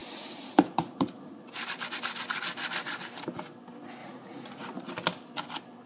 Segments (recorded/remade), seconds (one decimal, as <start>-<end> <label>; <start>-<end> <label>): 0.0-1.6 remade; 1.6-4.0 recorded; 4.0-4.9 remade; 4.9-5.9 recorded